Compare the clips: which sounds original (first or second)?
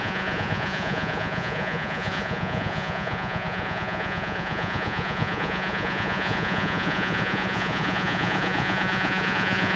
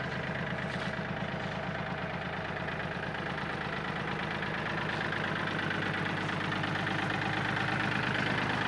second